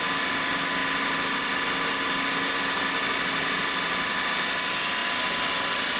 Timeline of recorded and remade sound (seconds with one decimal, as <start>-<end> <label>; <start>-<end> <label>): 0.0-6.0 recorded